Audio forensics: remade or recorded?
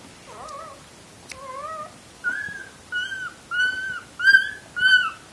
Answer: recorded